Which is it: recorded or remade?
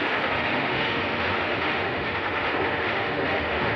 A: remade